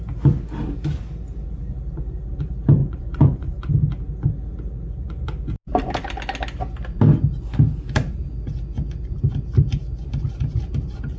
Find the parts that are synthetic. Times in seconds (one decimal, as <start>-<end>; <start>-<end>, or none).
2.8-3.7

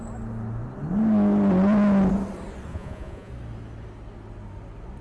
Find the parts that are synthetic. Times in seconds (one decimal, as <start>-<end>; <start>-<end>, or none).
2.7-3.3